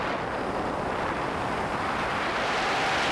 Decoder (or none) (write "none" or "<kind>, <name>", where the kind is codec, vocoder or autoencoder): none